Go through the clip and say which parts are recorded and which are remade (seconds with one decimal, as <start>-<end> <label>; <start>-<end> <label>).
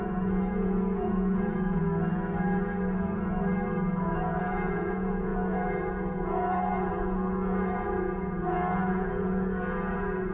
0.0-1.8 remade; 1.8-4.0 recorded; 4.0-10.3 remade